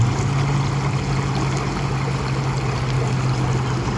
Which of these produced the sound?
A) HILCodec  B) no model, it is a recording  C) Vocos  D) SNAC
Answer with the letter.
B